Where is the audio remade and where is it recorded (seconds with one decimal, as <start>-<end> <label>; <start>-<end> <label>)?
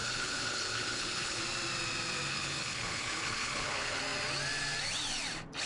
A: 0.0-1.4 remade; 1.4-2.3 recorded; 2.3-4.0 remade; 4.0-5.7 recorded